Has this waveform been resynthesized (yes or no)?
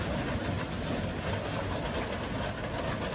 no